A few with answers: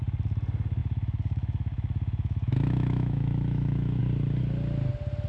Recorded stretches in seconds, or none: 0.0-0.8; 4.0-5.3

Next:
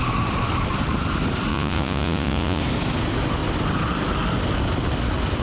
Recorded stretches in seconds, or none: 0.0-1.5; 2.6-5.4

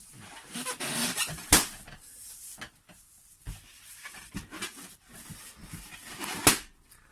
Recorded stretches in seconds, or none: 0.0-1.0; 2.3-3.7; 4.4-7.1

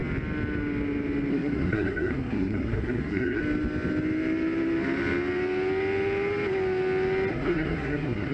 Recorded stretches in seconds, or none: 0.0-1.3; 3.4-7.3

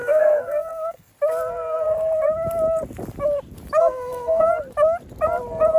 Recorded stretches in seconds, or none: 1.1-3.8; 4.5-5.8

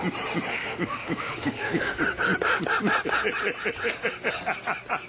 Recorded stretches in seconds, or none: 0.0-0.5; 2.0-5.1

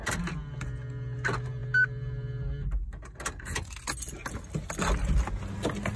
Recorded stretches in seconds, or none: 0.0-6.0

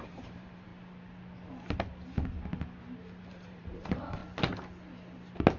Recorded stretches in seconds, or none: 0.7-3.2; 4.2-5.6